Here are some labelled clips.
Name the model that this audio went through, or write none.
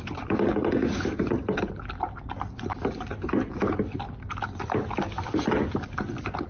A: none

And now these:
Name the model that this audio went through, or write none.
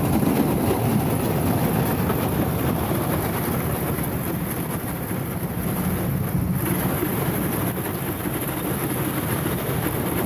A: none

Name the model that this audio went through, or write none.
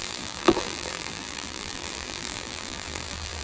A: vocoder, BigVGAN v2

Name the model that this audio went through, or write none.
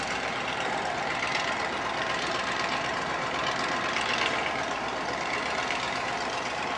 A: vocoder, BigVGAN v2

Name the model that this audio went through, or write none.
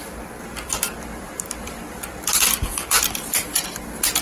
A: vocoder, BigVGAN v2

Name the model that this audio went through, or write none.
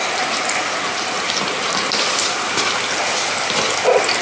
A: none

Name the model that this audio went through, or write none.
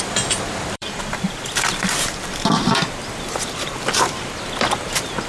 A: vocoder, BigVGAN v2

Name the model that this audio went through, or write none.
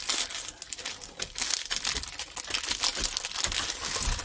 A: none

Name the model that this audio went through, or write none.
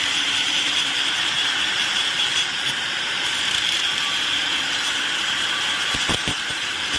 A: vocoder, BigVGAN v2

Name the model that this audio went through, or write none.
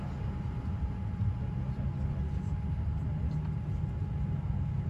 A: none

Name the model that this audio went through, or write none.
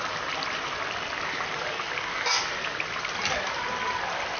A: none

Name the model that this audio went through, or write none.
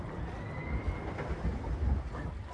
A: none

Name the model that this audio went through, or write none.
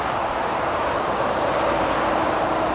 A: vocoder, BigVGAN v2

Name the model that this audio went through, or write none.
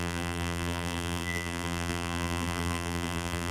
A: vocoder, BigVGAN v2